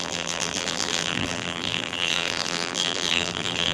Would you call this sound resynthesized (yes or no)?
yes